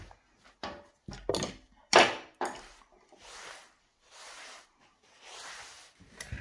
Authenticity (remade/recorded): recorded